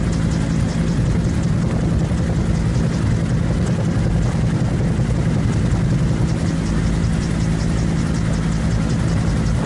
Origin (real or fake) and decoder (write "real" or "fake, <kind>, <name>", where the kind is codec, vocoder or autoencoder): real